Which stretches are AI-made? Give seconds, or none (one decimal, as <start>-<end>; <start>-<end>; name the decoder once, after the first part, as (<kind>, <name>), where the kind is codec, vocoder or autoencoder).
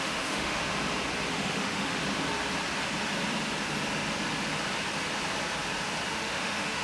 0.0-0.6 (autoencoder, DAC-VAE); 1.3-2.0; 6.1-6.8